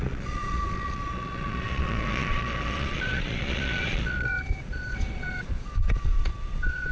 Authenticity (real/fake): fake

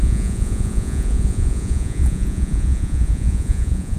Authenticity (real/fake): fake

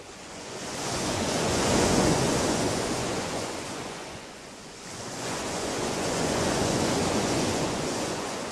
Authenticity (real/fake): fake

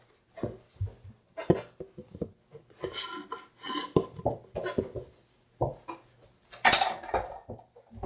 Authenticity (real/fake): real